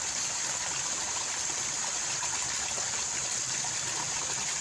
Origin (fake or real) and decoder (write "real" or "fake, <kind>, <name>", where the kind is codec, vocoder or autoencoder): real